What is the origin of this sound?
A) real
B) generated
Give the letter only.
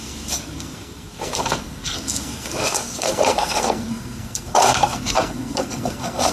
B